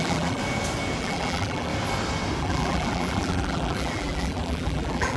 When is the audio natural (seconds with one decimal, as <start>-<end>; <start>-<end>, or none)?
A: 0.4-1.0; 1.7-2.4